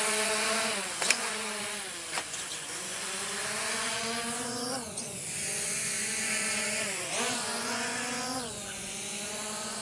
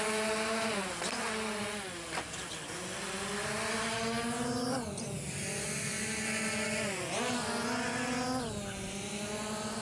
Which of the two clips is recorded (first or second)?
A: second